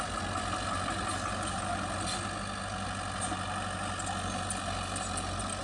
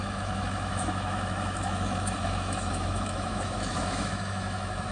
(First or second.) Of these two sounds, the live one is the first